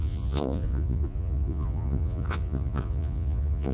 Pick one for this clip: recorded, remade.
remade